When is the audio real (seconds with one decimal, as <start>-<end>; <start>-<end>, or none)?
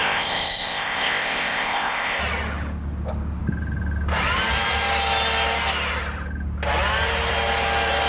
2.2-8.1